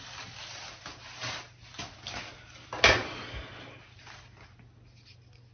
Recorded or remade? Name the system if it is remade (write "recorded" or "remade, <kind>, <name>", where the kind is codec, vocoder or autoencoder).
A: recorded